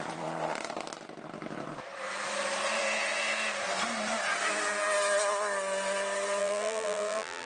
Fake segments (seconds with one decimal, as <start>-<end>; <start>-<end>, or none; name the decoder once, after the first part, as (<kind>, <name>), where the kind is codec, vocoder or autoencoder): 6.4-7.5 (vocoder, BigVGAN v2)